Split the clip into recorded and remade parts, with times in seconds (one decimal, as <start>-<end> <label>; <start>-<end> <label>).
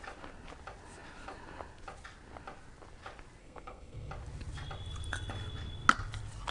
0.0-3.4 recorded; 3.4-4.1 remade; 4.1-6.5 recorded